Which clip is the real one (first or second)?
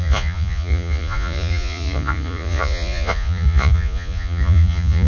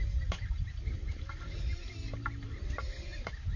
second